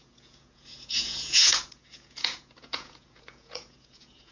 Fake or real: fake